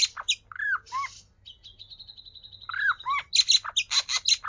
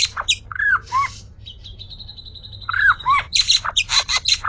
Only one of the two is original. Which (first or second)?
first